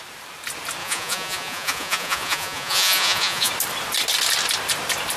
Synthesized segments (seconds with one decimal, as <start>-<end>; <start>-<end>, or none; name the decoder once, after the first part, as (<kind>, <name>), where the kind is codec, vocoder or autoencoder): 0.8-3.5 (vocoder, Vocos)